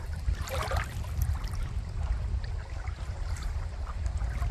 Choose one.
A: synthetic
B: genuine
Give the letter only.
A